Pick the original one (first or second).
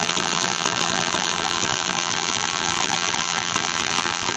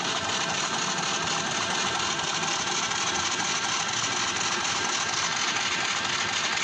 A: second